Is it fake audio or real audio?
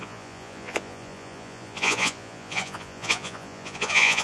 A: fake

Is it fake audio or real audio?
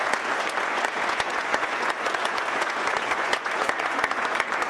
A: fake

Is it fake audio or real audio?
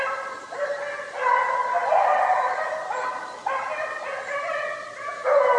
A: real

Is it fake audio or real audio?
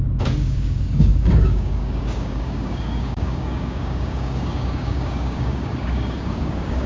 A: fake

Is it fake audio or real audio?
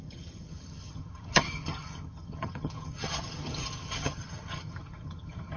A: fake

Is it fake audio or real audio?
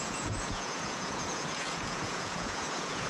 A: fake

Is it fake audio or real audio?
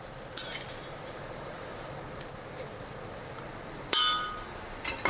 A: real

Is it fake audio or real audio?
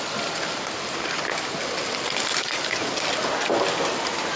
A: real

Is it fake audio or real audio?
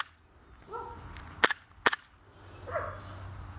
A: real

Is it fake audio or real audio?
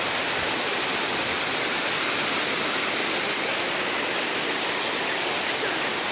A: real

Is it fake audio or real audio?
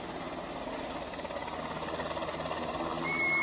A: real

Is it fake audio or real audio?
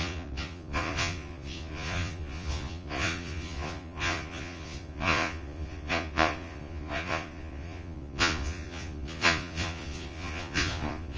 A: fake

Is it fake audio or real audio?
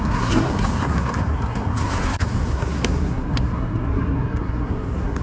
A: fake